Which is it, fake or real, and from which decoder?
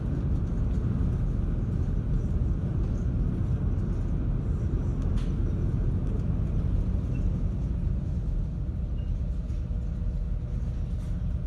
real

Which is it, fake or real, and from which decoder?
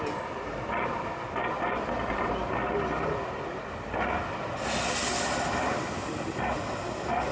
real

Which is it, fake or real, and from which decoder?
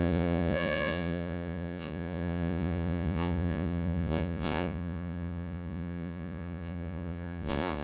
fake, vocoder, Vocos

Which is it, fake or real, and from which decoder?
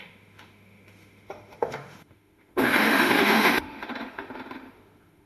fake, autoencoder, DAC-VAE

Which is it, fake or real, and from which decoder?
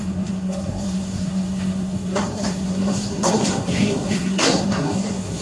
fake, codec, SNAC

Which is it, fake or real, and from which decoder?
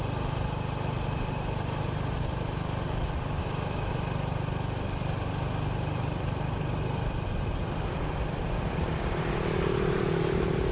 real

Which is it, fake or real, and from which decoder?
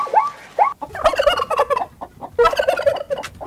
real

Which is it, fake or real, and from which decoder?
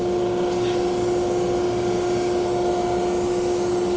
real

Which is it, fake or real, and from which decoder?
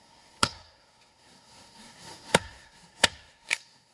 fake, codec, SNAC